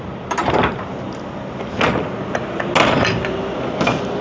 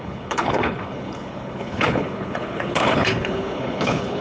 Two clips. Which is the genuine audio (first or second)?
first